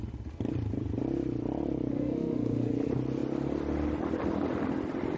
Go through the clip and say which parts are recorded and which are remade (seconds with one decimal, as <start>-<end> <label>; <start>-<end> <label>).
0.0-1.9 recorded; 1.9-2.7 remade; 2.7-5.2 recorded

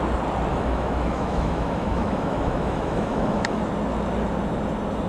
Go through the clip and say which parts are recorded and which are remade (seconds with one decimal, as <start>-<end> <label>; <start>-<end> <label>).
0.0-0.5 recorded; 0.5-3.6 remade; 3.6-5.1 recorded

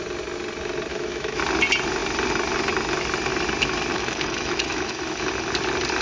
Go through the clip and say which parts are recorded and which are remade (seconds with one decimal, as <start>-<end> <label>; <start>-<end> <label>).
0.0-0.9 recorded; 0.9-1.4 remade; 1.4-3.9 recorded; 3.9-5.3 remade; 5.3-6.0 recorded

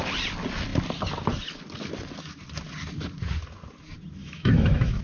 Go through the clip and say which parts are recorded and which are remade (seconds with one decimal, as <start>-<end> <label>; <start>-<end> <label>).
0.0-4.2 recorded; 4.2-5.0 remade

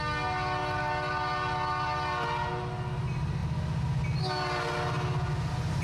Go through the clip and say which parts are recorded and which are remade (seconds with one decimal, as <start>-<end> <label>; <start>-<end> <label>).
0.0-5.8 recorded

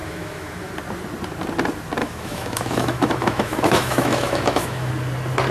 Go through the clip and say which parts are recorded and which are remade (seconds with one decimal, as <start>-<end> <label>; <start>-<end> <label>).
0.0-0.7 remade; 0.7-2.0 recorded; 2.0-4.9 remade; 4.9-5.5 recorded

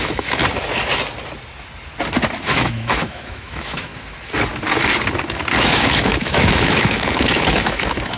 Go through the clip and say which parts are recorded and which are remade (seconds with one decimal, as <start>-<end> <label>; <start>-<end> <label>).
0.0-0.4 remade; 0.4-2.4 recorded; 2.4-3.9 remade; 3.9-5.6 recorded; 5.6-8.2 remade

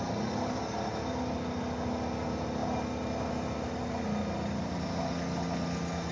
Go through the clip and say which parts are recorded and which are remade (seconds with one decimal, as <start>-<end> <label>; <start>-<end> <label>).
0.0-6.1 recorded